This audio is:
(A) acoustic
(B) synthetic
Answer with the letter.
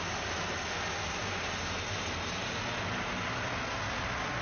A